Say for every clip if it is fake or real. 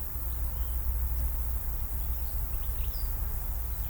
real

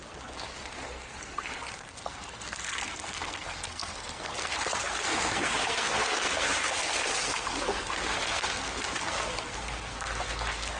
fake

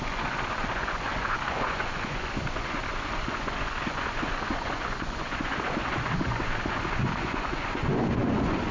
fake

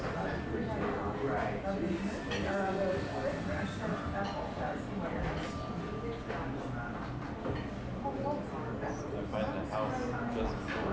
real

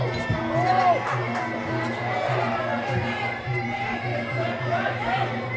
real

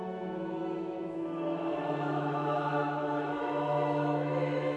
fake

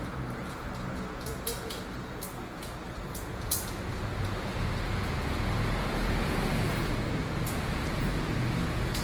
fake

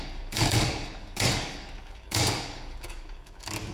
fake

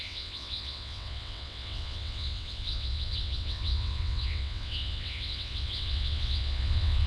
fake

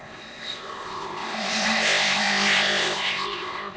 fake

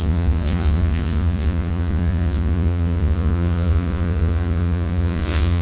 fake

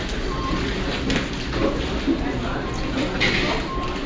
real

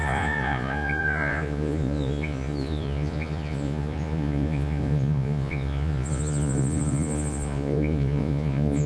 fake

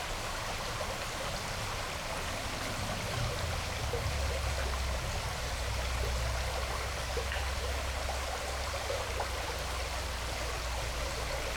real